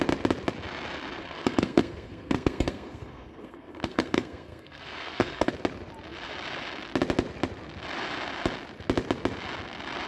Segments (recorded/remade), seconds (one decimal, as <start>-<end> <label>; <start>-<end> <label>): 0.0-1.2 recorded; 1.2-5.5 remade; 5.5-10.1 recorded

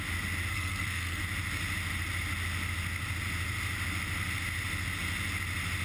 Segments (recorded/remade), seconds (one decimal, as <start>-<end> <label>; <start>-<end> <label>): 0.0-0.5 recorded; 0.5-1.2 remade; 1.2-5.8 recorded

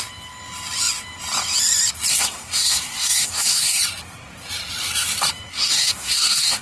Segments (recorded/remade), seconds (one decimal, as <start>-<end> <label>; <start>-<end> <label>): 0.0-2.1 recorded; 2.1-3.8 remade; 3.8-5.5 recorded; 5.5-6.6 remade

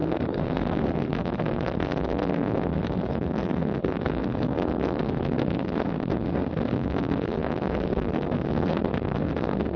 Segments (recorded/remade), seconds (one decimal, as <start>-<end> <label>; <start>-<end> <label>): 0.0-9.8 remade